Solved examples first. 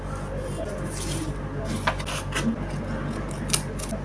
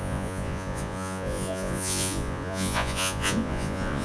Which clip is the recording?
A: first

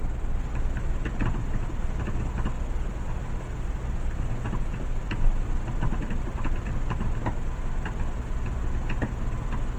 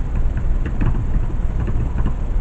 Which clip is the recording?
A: first